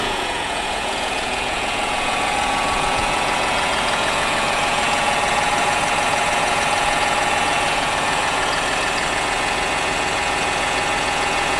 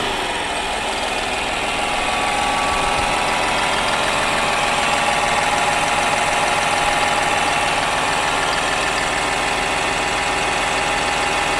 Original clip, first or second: second